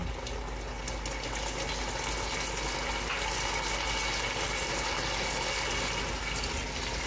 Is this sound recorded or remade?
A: recorded